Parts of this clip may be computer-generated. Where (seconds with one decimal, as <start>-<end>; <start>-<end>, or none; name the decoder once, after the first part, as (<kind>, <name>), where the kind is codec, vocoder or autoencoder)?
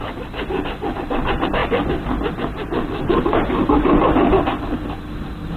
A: none